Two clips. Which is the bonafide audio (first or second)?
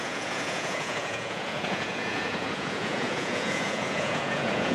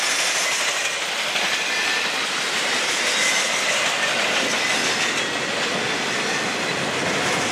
second